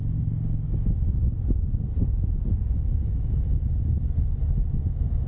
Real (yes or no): yes